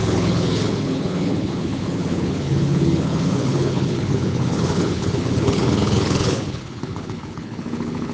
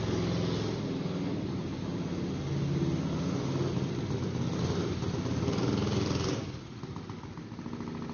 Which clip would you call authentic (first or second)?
second